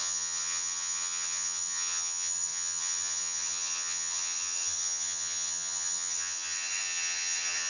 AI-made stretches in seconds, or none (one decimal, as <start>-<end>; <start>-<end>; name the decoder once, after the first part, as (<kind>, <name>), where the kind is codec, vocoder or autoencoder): 0.0-7.7 (vocoder, HiFi-GAN)